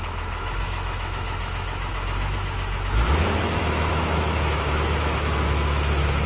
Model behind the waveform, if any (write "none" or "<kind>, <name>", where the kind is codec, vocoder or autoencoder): autoencoder, DAC-VAE